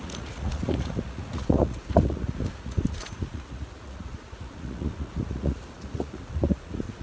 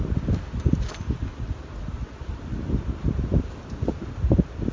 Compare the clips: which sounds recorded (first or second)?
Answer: second